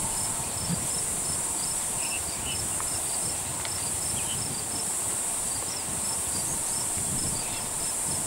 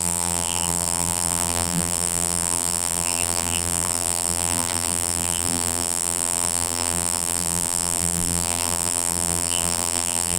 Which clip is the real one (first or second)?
first